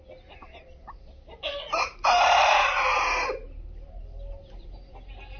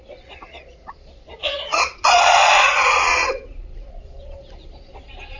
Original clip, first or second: first